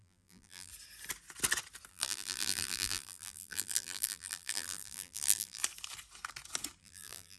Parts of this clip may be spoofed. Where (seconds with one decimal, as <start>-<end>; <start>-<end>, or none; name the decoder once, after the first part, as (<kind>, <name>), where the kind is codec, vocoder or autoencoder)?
0.0-0.7 (vocoder, BigVGAN v2); 1.9-5.6; 6.8-7.4